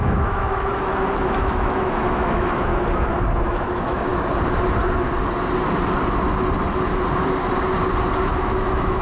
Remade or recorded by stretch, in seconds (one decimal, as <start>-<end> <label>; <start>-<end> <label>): 0.0-2.7 remade; 2.7-3.4 recorded; 3.4-4.1 remade; 4.1-8.2 recorded; 8.2-9.0 remade